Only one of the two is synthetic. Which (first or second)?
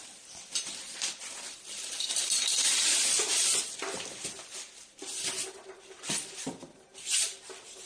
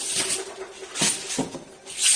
first